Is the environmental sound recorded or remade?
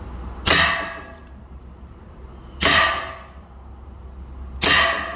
recorded